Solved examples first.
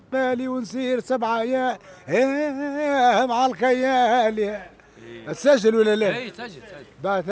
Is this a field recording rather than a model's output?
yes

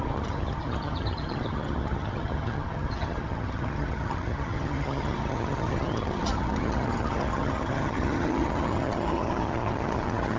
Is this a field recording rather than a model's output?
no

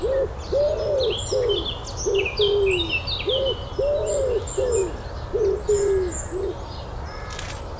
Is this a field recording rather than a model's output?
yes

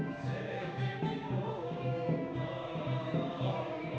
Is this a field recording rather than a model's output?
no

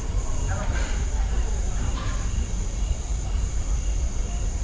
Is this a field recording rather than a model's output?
no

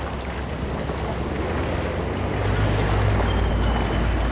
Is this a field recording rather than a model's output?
yes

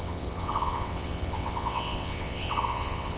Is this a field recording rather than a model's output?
no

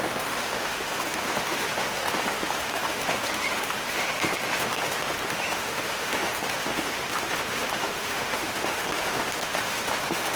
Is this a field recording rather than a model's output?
no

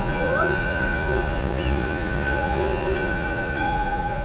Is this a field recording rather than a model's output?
no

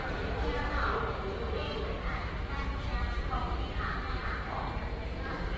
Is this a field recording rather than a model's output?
no